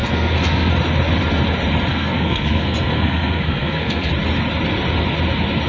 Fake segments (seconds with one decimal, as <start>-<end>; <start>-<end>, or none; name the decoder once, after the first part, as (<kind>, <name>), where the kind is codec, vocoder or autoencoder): 0.0-0.7 (codec, SNAC); 1.9-4.1